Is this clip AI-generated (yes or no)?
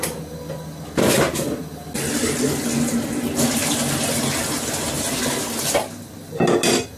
no